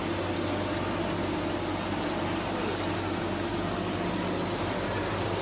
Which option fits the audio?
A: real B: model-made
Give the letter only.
A